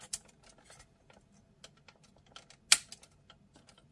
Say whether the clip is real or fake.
real